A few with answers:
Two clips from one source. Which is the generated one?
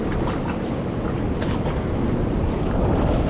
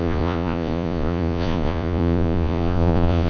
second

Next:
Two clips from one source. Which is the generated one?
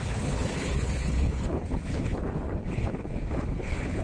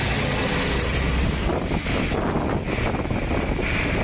first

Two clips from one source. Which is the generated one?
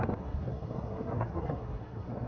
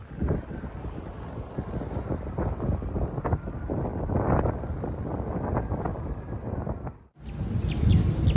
first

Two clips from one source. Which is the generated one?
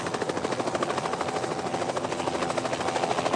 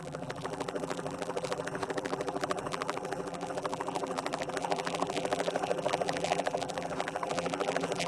second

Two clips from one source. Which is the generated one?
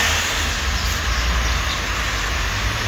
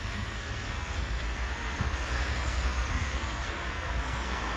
second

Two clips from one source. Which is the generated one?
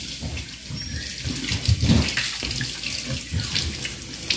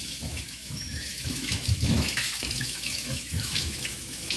second